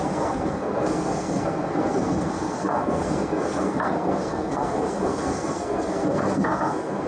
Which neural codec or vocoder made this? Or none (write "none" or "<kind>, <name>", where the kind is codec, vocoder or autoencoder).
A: codec, SNAC